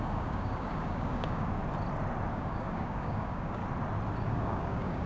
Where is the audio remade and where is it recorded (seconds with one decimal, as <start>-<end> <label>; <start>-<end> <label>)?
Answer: 0.0-1.6 remade; 1.6-2.3 recorded; 2.3-3.6 remade; 3.6-4.2 recorded; 4.2-5.1 remade